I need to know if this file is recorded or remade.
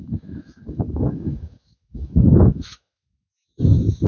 remade